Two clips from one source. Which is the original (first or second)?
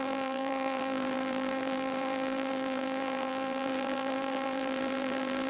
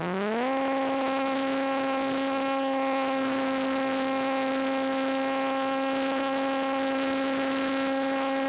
second